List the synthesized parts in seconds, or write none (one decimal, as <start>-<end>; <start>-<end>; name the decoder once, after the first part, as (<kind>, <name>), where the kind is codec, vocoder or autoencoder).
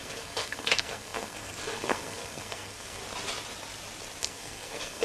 0.0-3.0 (codec, SNAC); 4.2-5.0